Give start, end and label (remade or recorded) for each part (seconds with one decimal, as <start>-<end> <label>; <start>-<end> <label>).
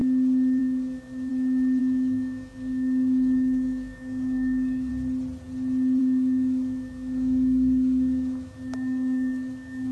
0.0-0.6 recorded; 0.6-1.3 remade; 1.3-1.8 recorded; 1.8-4.9 remade; 4.9-6.0 recorded; 6.0-9.9 remade